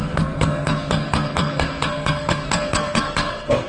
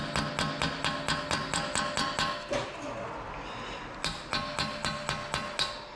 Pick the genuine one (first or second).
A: second